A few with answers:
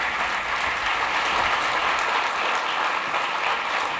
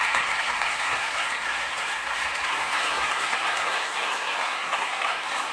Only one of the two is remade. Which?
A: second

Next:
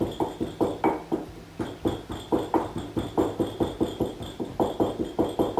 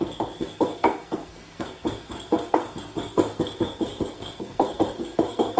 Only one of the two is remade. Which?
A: second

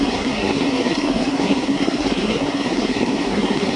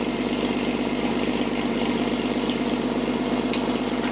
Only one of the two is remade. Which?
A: first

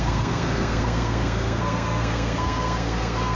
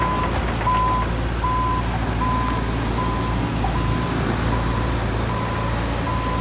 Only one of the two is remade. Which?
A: first